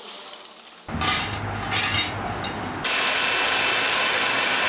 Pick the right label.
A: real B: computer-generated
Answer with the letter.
A